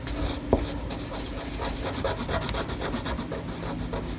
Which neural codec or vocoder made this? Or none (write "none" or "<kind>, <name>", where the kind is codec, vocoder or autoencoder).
none